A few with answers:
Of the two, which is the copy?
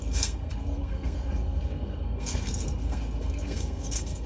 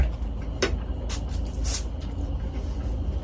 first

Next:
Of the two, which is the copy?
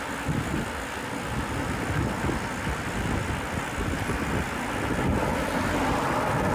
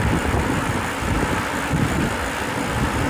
second